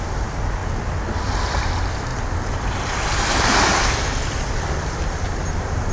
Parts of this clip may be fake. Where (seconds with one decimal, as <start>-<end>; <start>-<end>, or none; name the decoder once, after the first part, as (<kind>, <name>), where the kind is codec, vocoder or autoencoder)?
0.6-1.7 (vocoder, BigVGAN v2); 2.1-5.9